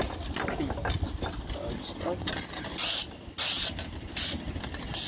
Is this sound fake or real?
real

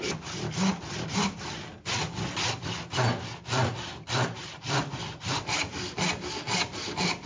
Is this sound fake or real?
real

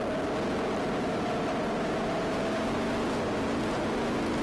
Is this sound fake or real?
real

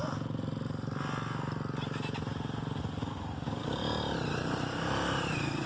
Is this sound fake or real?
real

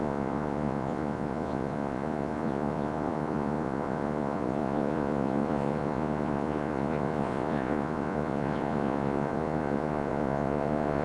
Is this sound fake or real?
fake